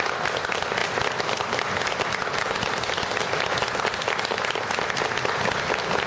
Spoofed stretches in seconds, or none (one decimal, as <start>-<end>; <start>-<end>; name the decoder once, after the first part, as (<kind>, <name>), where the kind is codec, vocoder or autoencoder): none